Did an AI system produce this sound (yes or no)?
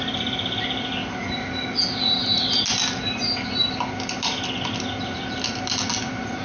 no